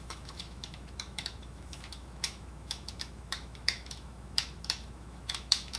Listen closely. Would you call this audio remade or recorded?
remade